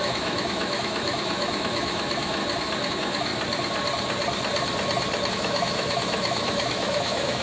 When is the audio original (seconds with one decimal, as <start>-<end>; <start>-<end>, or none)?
2.4-2.9; 3.3-5.3